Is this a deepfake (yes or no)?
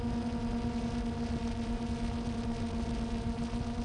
no